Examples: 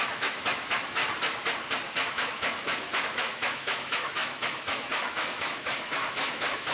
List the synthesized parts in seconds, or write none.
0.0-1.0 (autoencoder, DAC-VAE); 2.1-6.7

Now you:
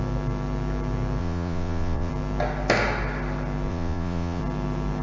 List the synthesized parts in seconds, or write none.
1.2-2.1 (vocoder, Vocos); 3.7-4.4

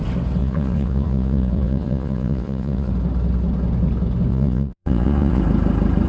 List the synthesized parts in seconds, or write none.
0.4-2.9 (vocoder, Vocos); 4.3-5.4

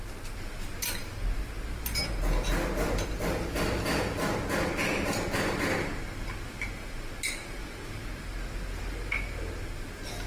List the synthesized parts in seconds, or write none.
none